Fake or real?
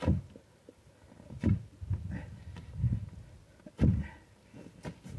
real